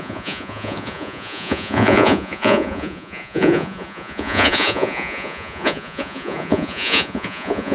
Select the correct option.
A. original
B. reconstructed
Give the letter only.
B